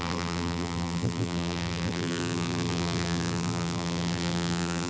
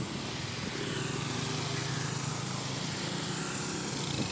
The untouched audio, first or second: second